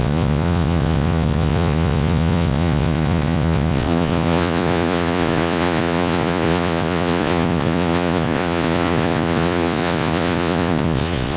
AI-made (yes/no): yes